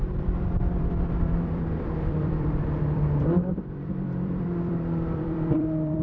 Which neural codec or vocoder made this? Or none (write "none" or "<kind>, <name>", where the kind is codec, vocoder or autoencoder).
vocoder, BigVGAN v2